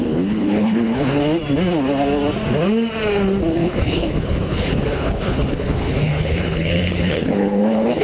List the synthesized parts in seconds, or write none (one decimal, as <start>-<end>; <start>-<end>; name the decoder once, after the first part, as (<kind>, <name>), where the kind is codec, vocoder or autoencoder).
0.0-1.2 (codec, HILCodec); 3.5-8.0